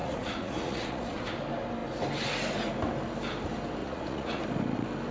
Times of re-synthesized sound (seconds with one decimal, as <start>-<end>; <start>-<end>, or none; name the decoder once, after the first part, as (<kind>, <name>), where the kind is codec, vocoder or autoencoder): 0.0-1.3 (vocoder, Vocos); 3.8-4.4